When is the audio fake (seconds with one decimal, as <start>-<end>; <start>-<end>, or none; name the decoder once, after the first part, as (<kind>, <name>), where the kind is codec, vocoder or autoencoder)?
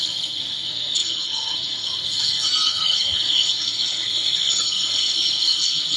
0.0-6.0 (codec, SNAC)